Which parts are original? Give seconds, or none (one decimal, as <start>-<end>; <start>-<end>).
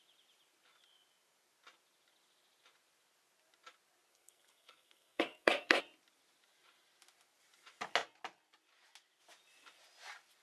0.0-4.1; 5.8-10.4